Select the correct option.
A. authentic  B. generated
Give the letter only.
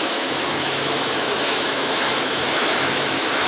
B